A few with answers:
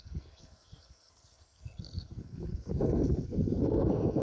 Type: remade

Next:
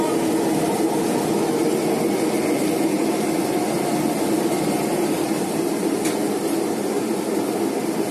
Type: recorded